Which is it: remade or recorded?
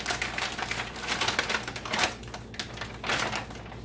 recorded